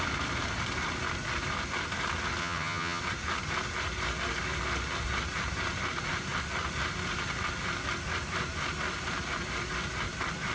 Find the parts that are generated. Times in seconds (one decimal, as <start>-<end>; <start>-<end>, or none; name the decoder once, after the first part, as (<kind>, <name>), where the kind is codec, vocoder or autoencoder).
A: 2.4-3.0 (vocoder, HiFi-GAN)